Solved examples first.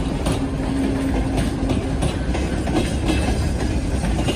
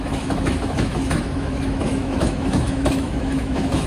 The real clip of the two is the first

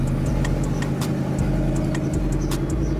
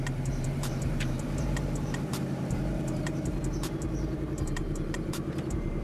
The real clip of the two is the first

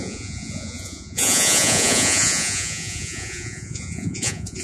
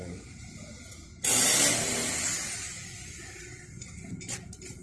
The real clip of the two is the second